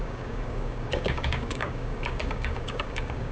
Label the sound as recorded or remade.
remade